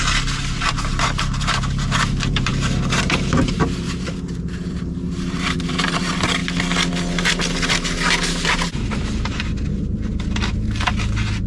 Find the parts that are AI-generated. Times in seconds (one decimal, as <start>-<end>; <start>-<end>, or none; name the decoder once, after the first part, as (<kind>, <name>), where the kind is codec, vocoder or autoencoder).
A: 0.0-6.4 (vocoder, BigVGAN v2)